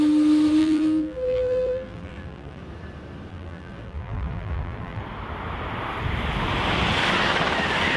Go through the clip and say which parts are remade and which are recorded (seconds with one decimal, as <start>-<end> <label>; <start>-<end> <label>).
0.0-0.6 recorded; 0.6-2.6 remade; 2.6-3.3 recorded; 3.3-5.0 remade; 5.0-8.0 recorded